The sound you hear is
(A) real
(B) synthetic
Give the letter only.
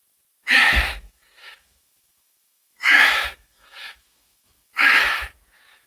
B